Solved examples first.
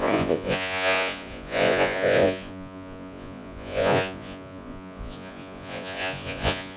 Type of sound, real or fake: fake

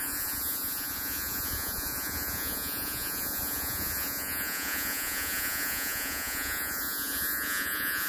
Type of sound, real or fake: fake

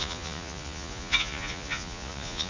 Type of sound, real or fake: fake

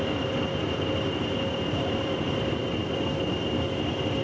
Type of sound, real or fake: real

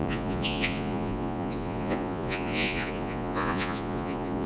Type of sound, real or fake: fake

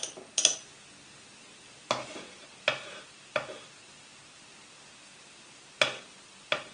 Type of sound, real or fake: real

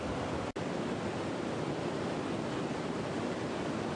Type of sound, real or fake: real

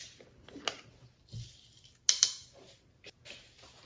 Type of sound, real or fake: real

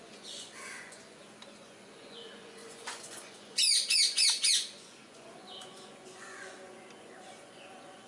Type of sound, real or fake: fake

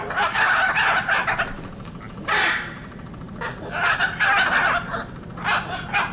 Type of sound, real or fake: real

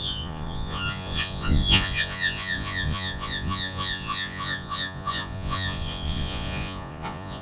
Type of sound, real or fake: fake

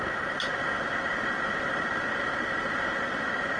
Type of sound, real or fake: real